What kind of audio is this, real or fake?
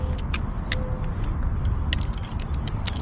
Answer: real